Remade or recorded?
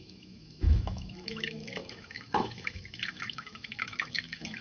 remade